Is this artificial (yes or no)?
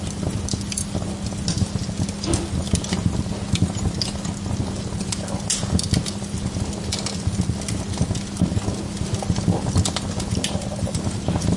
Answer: no